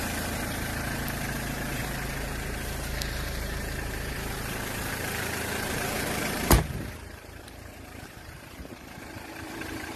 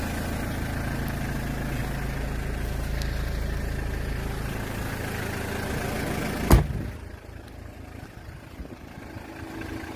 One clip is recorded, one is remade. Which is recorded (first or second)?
second